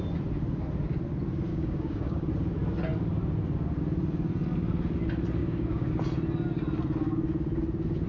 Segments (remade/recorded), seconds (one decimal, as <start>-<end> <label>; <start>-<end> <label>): 0.0-1.5 recorded; 1.5-2.3 remade; 2.3-5.4 recorded; 5.4-5.9 remade; 5.9-8.1 recorded